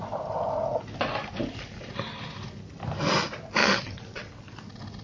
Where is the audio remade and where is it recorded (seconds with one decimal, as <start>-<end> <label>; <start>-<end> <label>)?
0.0-3.6 recorded; 3.6-4.3 remade; 4.3-5.0 recorded